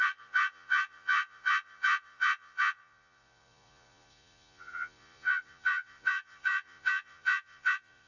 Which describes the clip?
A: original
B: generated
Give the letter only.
B